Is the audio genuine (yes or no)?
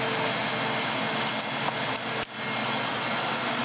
yes